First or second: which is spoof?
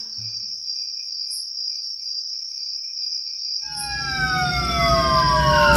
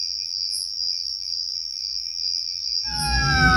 second